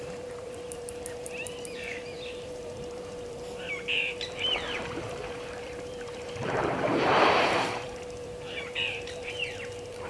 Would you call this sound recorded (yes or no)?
no